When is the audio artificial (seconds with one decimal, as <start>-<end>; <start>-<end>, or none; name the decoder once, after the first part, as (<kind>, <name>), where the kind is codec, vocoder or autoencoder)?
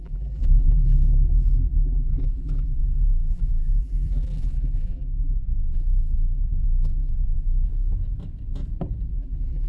0.0-7.7 (vocoder, BigVGAN v2); 9.1-9.7